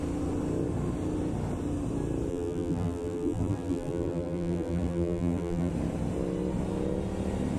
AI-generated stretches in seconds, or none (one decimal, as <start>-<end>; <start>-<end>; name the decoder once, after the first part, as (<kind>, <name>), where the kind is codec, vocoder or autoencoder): 2.3-5.7 (vocoder, BigVGAN v2)